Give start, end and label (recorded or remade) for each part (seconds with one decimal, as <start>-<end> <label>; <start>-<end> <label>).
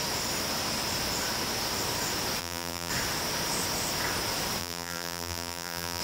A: 0.0-2.4 recorded; 2.4-2.9 remade; 2.9-4.6 recorded; 4.6-6.0 remade